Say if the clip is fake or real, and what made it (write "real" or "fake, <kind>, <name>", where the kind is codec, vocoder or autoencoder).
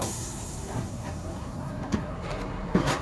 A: fake, codec, SNAC